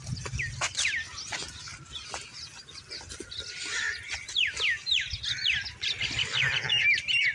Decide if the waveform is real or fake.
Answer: real